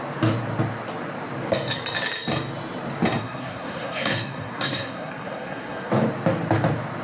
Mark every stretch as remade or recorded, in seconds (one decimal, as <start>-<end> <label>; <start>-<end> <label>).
0.0-3.2 recorded; 3.2-5.9 remade; 5.9-7.0 recorded